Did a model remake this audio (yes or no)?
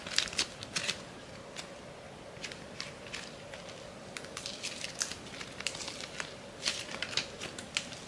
no